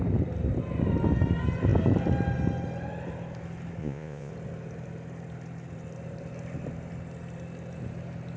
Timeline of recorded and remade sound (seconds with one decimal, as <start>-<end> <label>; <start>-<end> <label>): 0.0-3.8 recorded; 3.8-4.3 remade; 4.3-8.4 recorded